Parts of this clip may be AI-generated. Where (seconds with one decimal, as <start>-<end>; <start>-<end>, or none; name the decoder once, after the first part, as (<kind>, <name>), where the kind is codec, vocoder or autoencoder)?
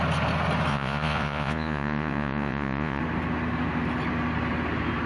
0.7-3.0 (vocoder, Vocos)